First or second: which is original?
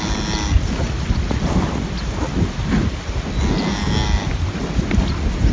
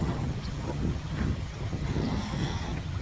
first